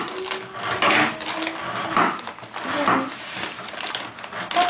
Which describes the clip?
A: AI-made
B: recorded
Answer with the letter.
B